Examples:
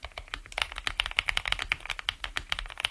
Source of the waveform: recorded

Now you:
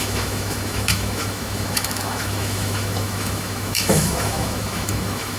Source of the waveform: remade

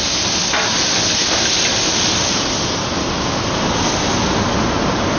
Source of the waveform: recorded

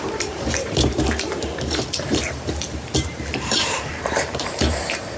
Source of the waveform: remade